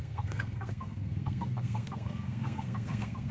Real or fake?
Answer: fake